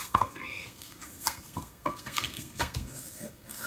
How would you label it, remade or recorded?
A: remade